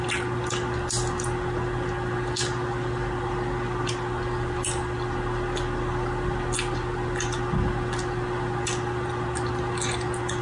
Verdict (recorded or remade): recorded